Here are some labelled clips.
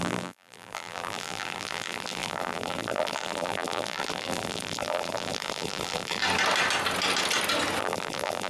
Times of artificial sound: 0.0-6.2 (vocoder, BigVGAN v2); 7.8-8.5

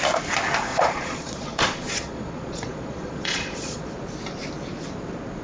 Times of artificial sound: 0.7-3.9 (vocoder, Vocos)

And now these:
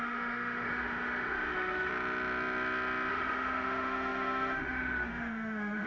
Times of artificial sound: 0.0-1.9 (autoencoder, DAC-VAE); 3.1-5.9

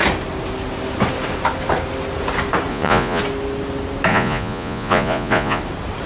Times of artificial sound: 2.7-3.2 (vocoder, Vocos); 4.1-5.6